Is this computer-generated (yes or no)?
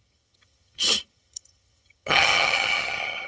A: yes